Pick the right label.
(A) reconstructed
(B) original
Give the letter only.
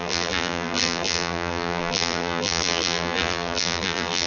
A